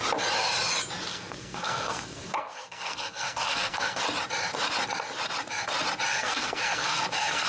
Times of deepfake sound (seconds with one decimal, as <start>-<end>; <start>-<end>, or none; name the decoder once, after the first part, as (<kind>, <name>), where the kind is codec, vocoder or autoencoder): 1.1-4.0 (codec, SNAC); 6.1-7.5